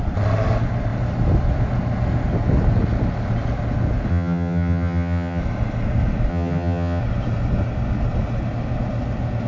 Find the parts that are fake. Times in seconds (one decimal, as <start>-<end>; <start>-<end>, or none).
4.1-5.4; 6.3-7.0